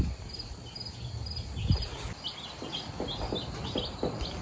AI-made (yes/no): no